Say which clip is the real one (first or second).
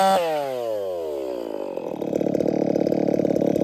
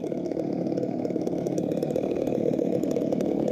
first